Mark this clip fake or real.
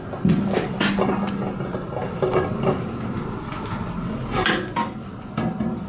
real